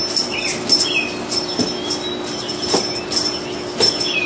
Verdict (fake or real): real